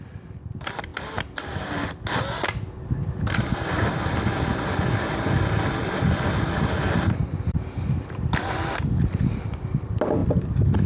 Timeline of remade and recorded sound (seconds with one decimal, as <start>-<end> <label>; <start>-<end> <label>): 0.0-10.9 recorded